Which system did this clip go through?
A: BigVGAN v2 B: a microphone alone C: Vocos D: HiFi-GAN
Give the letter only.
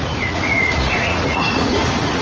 C